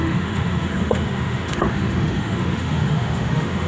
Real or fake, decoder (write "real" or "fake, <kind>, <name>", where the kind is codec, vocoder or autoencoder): fake, autoencoder, DAC-VAE